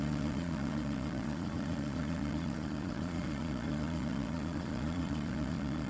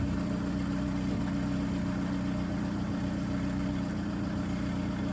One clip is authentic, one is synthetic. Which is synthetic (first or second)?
first